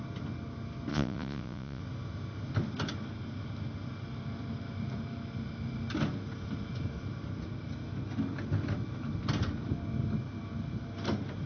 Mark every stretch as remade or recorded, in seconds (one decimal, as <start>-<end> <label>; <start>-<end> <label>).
0.0-0.9 recorded; 0.9-1.8 remade; 1.8-11.5 recorded